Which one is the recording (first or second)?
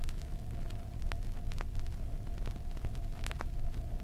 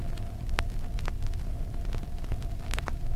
first